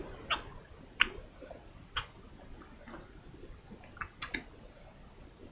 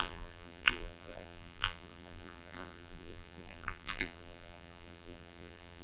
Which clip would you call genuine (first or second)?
first